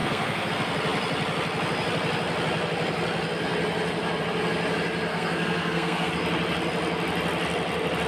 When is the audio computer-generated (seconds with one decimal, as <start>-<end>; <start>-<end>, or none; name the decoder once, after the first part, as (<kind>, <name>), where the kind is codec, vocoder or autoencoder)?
0.0-0.5 (codec, SNAC); 5.1-6.1